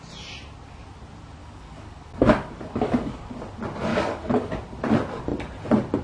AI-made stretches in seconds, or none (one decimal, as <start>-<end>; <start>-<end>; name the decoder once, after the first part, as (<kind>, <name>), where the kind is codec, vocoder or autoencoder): 1.4-3.3 (codec, DAC); 3.9-4.5